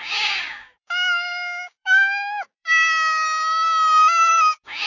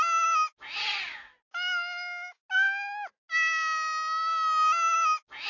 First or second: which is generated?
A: first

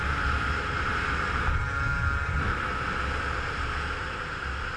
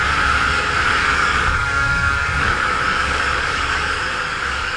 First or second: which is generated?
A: second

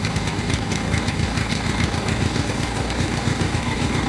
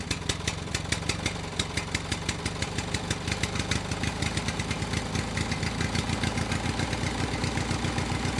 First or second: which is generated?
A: first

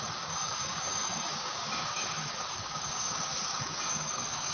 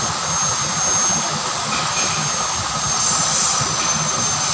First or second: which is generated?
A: first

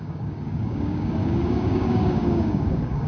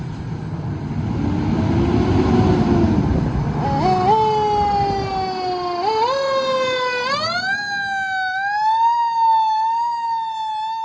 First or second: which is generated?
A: first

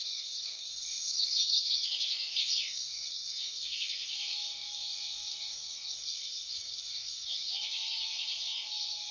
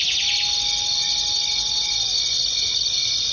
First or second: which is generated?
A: first